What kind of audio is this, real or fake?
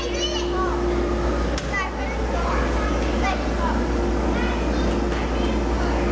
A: real